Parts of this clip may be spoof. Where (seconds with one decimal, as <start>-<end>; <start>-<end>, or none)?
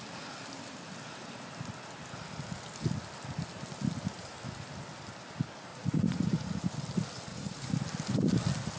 5.7-6.6; 7.3-7.8